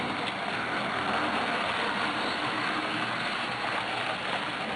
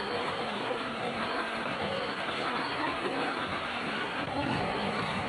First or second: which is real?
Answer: first